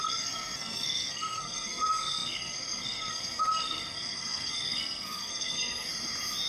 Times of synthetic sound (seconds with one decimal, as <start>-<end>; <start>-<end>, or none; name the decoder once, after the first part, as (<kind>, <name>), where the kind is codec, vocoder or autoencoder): 0.0-5.9 (codec, SNAC)